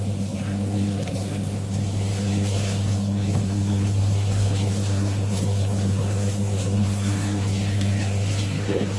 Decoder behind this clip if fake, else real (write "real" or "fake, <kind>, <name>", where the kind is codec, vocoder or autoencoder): fake, codec, SNAC